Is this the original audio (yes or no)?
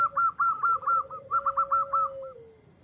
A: yes